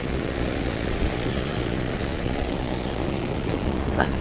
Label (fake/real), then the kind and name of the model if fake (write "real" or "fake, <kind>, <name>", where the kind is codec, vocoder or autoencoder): fake, vocoder, Vocos